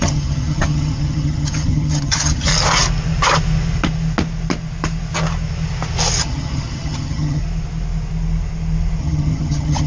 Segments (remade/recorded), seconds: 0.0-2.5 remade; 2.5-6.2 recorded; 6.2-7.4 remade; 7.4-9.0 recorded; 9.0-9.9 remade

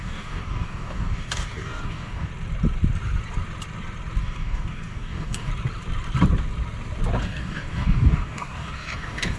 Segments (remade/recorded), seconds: 0.0-2.3 remade; 2.3-4.2 recorded; 4.2-5.5 remade; 5.5-7.2 recorded; 7.2-9.4 remade

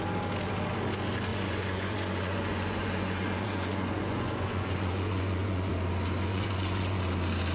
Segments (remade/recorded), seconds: 0.0-1.3 recorded; 1.3-5.7 remade; 5.7-6.3 recorded; 6.3-7.0 remade; 7.0-7.5 recorded

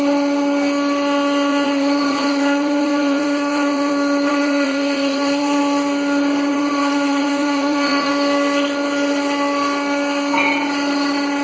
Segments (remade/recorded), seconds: 0.0-1.5 recorded; 1.5-3.9 remade; 3.9-4.3 recorded; 4.3-5.6 remade; 5.6-6.5 recorded; 6.5-8.1 remade; 8.1-11.4 recorded

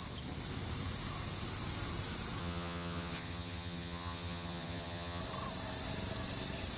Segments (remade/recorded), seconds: 0.0-2.4 recorded; 2.4-5.2 remade; 5.2-6.8 recorded

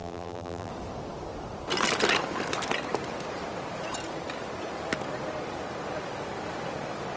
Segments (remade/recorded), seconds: 0.0-0.7 remade; 0.7-7.2 recorded

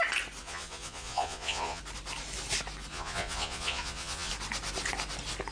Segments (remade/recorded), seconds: 0.0-0.4 recorded; 0.4-1.8 remade; 1.8-2.9 recorded; 2.9-4.3 remade; 4.3-5.5 recorded